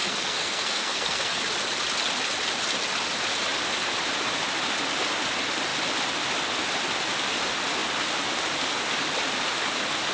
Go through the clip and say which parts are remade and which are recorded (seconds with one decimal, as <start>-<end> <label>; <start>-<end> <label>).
0.0-1.4 remade; 1.4-10.1 recorded